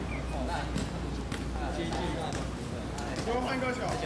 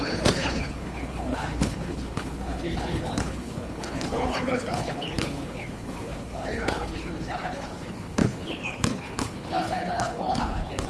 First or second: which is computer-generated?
second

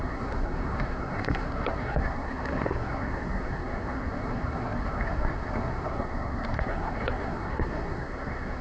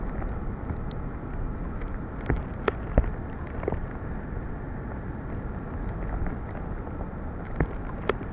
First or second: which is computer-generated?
first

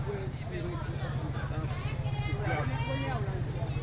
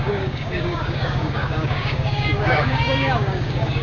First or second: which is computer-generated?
second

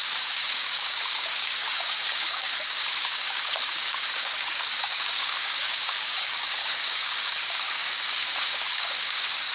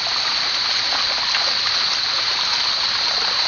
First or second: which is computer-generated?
first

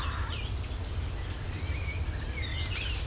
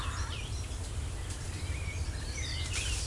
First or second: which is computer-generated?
second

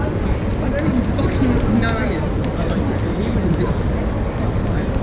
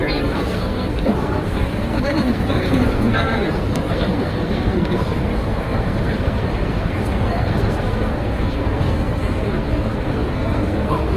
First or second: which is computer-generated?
second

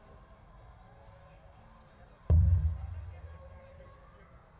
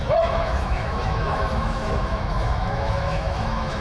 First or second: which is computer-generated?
second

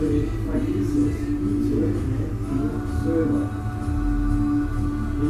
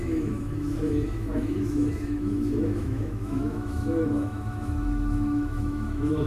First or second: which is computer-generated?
second